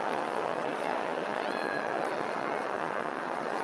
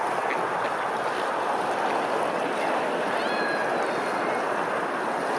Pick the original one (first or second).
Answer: second